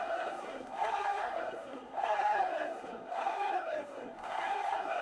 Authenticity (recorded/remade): remade